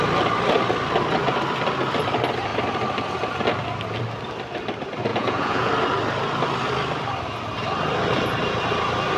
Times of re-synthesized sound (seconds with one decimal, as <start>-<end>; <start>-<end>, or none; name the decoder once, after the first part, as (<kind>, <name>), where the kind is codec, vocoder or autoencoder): 5.1-5.7 (vocoder, Vocos)